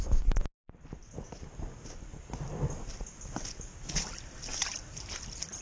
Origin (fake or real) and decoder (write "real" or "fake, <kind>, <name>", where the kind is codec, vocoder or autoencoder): real